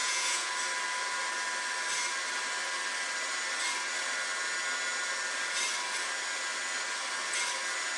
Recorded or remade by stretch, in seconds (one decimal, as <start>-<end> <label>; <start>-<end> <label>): 0.0-0.5 remade; 0.5-8.0 recorded